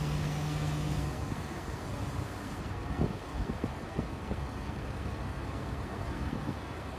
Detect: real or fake fake